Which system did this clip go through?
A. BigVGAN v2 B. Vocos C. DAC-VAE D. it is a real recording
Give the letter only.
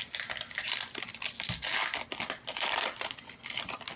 D